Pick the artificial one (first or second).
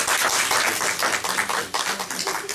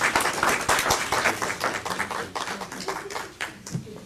second